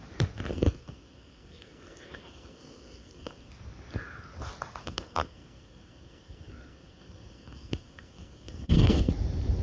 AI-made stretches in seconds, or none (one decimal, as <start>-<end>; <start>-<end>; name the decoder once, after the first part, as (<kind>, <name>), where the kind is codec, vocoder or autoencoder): 0.5-3.5 (codec, SNAC); 4.8-9.1